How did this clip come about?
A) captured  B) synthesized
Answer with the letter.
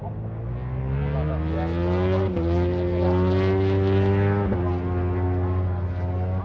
A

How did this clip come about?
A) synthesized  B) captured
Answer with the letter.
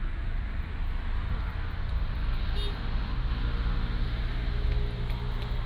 B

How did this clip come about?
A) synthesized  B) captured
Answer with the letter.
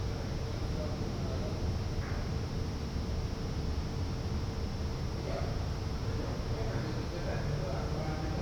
B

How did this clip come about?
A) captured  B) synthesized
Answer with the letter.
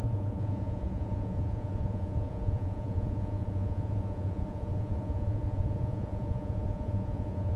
B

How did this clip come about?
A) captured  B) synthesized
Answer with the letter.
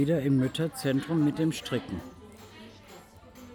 A